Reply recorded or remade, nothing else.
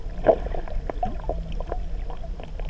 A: recorded